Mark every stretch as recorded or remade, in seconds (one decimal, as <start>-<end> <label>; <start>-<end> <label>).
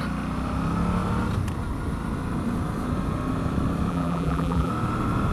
0.0-3.9 recorded; 3.9-4.7 remade; 4.7-5.3 recorded